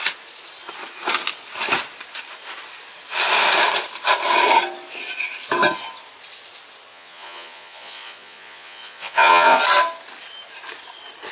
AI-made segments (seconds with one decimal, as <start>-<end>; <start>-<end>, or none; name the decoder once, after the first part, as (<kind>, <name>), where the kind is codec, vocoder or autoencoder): 6.9-9.6 (vocoder, Vocos)